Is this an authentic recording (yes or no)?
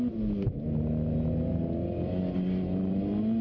yes